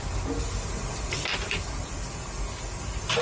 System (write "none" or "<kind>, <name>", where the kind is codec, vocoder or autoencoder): none